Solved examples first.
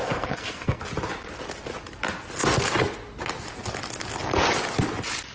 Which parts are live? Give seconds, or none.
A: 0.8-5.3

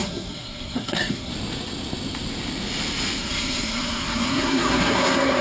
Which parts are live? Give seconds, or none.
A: 1.3-3.2

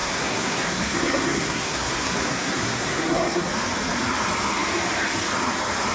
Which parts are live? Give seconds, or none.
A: 3.5-5.9